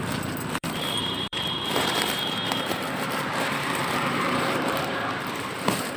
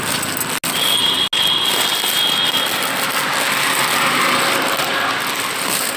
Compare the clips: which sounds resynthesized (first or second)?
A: first